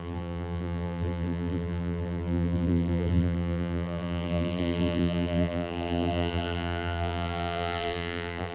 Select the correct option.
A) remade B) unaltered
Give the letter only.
A